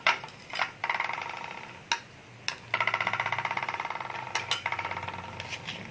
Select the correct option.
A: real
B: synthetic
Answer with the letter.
A